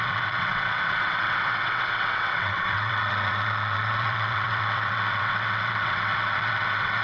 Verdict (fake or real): fake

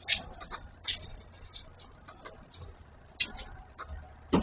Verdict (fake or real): real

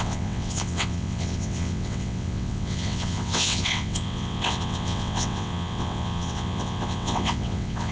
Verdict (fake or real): fake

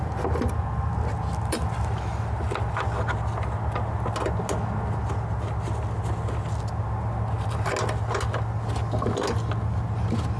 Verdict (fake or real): real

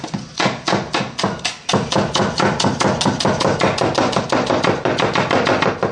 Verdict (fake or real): real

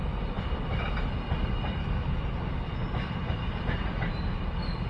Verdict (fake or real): real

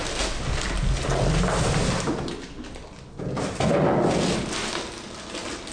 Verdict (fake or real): real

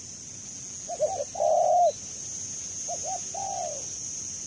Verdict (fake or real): real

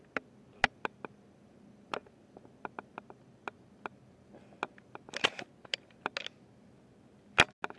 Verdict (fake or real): real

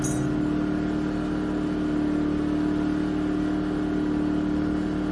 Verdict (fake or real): real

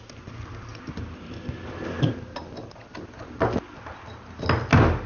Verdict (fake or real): real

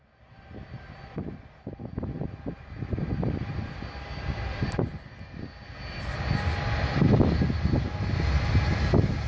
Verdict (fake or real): real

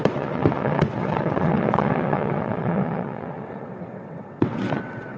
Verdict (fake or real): fake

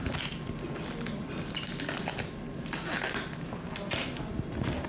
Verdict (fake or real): real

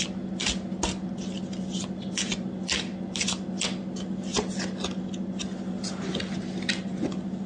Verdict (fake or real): real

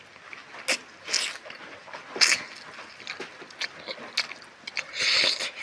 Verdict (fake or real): real